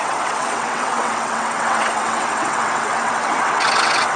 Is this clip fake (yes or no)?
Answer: yes